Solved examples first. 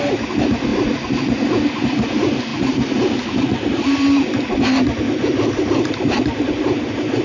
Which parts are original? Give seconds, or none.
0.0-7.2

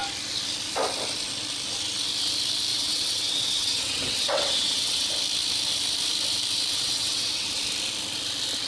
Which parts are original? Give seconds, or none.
0.0-2.7; 5.1-6.7; 7.6-8.7

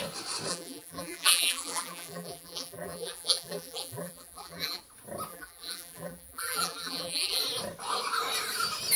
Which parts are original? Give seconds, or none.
0.0-0.5; 4.8-5.3; 7.4-9.0

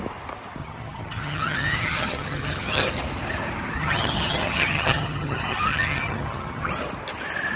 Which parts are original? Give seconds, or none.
0.0-0.6; 2.9-3.8; 6.7-7.6

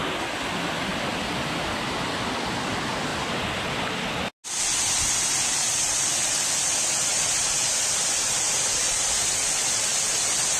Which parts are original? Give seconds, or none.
0.0-10.6

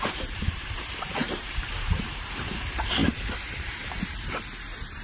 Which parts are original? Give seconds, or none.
none

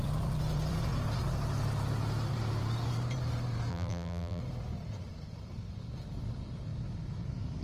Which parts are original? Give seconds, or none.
0.0-3.7; 4.4-7.6

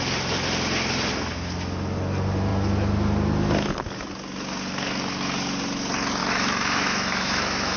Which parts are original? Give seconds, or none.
0.0-6.2